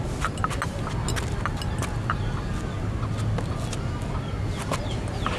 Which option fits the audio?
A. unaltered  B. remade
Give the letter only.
A